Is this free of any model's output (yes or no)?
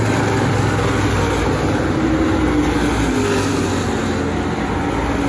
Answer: yes